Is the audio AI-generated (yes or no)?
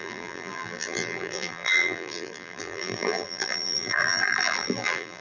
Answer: yes